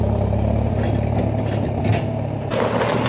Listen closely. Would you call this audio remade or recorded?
recorded